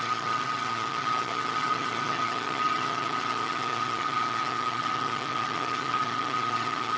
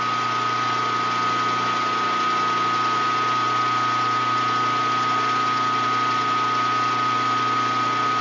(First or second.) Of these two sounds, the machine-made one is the first